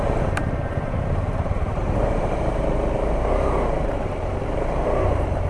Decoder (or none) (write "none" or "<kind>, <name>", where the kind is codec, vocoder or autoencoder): vocoder, BigVGAN v2